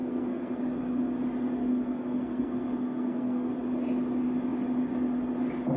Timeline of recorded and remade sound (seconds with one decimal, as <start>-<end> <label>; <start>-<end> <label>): 0.0-0.6 remade; 0.6-1.7 recorded; 1.7-3.5 remade; 3.5-5.8 recorded

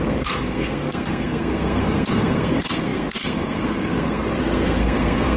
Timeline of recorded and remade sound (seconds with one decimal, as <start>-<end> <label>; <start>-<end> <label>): 0.0-5.4 remade

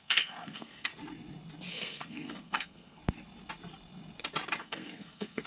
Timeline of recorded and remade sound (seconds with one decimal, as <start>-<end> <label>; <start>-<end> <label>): 0.0-0.9 remade; 0.9-1.7 recorded; 1.7-3.0 remade; 3.0-4.6 recorded; 4.6-5.5 remade

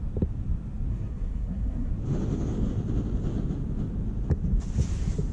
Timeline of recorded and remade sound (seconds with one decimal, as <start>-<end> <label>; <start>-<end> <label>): 0.0-0.9 recorded; 0.9-1.9 remade; 1.9-5.3 recorded

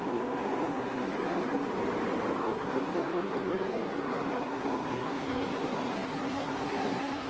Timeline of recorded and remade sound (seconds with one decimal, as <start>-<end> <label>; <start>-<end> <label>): 0.0-1.7 remade; 1.7-2.4 recorded; 2.4-7.3 remade

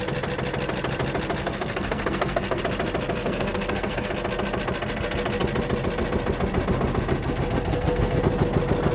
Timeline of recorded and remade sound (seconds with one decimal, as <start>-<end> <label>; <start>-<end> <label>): 0.0-1.4 recorded; 1.4-2.6 remade; 2.6-3.2 recorded; 3.2-4.1 remade; 4.1-7.7 recorded; 7.7-8.2 remade; 8.2-8.9 recorded